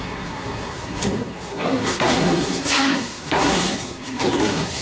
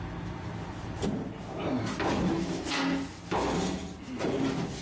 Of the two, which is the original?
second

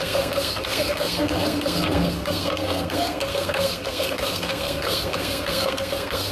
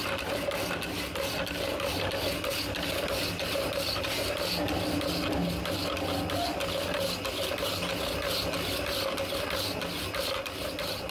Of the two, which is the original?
second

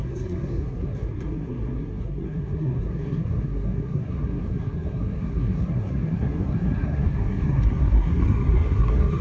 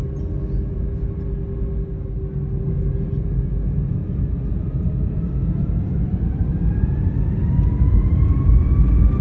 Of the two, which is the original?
second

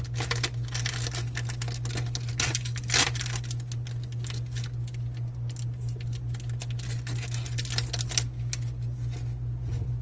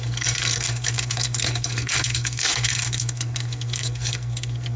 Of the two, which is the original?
first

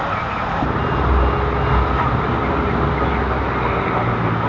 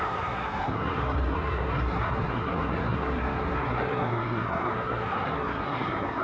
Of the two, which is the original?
first